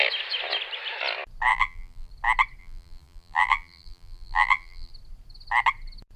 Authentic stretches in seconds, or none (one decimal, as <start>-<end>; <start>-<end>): 0.0-1.5; 2.1-2.6; 4.9-6.2